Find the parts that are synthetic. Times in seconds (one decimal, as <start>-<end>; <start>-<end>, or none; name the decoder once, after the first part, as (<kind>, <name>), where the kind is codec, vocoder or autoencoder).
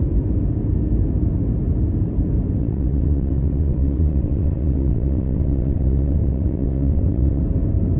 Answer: 2.6-7.4 (vocoder, WaveNeXt)